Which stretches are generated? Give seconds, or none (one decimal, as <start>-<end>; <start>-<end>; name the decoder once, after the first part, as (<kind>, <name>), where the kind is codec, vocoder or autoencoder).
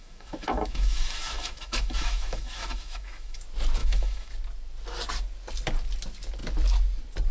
0.0-3.4 (autoencoder, DAC-VAE); 3.8-4.3